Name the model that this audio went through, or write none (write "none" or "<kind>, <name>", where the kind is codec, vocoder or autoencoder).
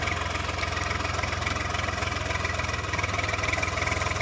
none